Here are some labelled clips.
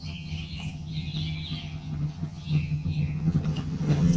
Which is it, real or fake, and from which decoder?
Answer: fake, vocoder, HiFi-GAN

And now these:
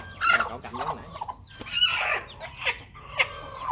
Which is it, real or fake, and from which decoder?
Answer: real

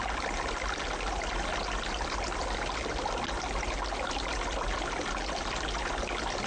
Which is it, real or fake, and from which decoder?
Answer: real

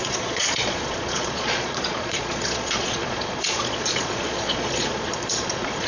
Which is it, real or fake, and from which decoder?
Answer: fake, vocoder, Vocos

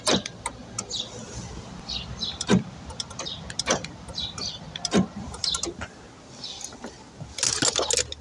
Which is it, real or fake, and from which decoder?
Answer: real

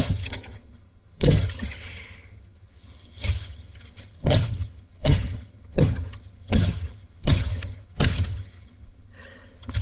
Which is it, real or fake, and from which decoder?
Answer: fake, vocoder, HiFi-GAN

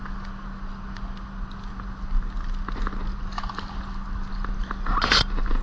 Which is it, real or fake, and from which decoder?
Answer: real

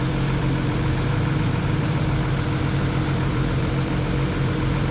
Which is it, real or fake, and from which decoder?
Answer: fake, vocoder, BigVGAN v2